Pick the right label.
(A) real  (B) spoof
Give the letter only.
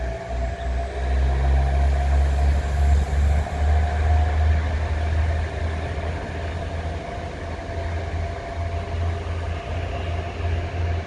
A